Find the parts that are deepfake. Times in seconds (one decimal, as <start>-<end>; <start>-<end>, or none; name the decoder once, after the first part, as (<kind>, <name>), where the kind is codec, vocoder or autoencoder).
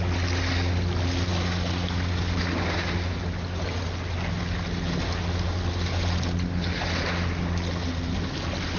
none